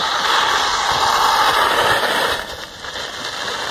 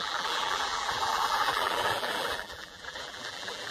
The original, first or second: first